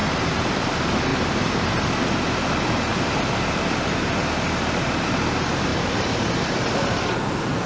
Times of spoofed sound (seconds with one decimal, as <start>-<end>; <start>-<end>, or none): 0.0-0.7; 1.1-1.7; 2.9-4.3; 5.7-6.6